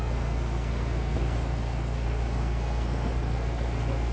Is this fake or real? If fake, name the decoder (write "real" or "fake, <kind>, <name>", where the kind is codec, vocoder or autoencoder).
fake, codec, SNAC